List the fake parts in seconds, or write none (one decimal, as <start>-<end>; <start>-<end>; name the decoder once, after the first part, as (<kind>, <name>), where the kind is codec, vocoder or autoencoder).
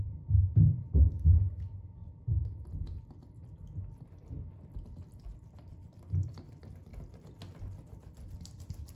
none